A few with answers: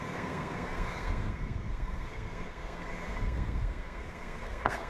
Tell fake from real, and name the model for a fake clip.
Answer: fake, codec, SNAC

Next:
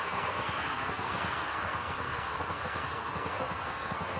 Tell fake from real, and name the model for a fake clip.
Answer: fake, codec, SNAC